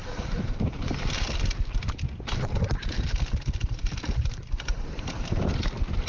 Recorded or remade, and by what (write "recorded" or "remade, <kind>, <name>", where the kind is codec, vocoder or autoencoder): remade, vocoder, BigVGAN v2